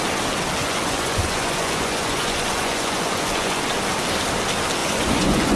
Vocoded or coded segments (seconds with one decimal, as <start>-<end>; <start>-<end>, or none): 0.6-3.6; 4.8-5.6